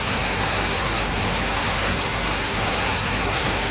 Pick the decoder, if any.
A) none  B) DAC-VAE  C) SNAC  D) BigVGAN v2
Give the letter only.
C